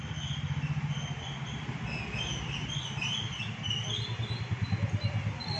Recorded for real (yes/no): yes